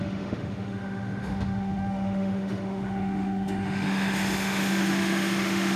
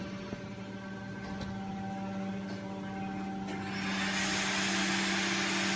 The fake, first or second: first